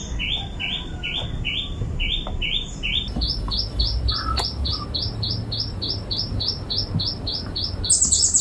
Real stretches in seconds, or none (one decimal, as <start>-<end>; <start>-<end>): 0.0-8.4